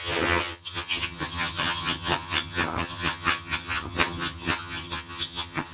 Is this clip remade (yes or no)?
yes